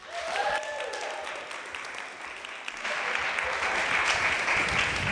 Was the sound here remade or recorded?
recorded